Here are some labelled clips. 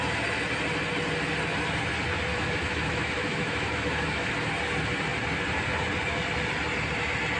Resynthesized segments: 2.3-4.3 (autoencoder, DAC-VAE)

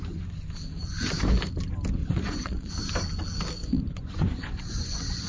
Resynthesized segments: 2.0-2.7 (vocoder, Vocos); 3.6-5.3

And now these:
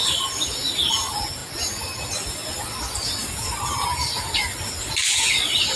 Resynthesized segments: none

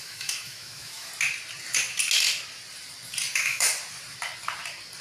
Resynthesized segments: 0.0-1.1 (autoencoder, DAC-VAE); 3.3-3.7

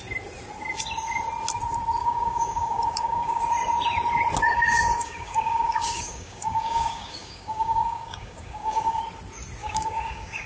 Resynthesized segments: 2.0-3.4 (codec, DAC); 4.5-9.0; 9.6-10.5

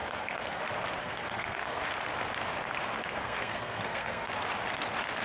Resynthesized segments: 0.0-0.6 (codec, SNAC); 1.0-1.8; 3.0-4.3

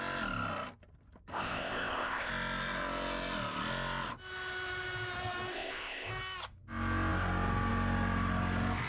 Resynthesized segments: 1.3-2.3 (codec, ZipCodec); 5.5-6.1